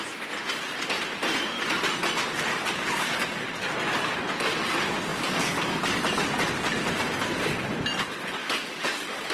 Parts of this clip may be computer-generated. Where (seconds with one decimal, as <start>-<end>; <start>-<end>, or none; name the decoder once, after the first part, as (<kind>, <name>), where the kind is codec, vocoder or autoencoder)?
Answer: 2.5-3.7 (codec, DAC); 5.1-5.8; 8.4-9.3